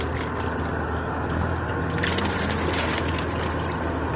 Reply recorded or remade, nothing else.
recorded